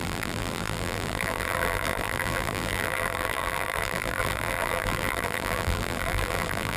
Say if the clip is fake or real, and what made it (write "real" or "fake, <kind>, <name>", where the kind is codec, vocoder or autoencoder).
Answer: fake, vocoder, BigVGAN v2